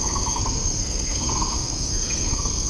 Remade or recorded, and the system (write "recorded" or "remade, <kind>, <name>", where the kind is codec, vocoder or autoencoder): remade, codec, SNAC